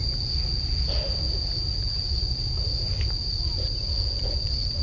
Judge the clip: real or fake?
real